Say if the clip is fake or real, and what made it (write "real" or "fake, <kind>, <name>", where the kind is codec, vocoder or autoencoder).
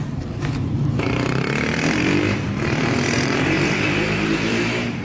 fake, vocoder, BigVGAN v2